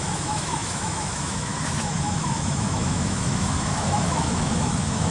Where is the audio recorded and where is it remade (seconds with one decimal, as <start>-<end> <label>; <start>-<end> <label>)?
0.0-5.1 remade